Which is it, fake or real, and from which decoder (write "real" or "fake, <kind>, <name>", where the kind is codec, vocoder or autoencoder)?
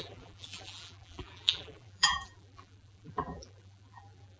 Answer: fake, vocoder, BigVGAN v2